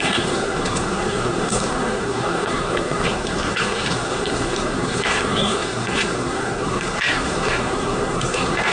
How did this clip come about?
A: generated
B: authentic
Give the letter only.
A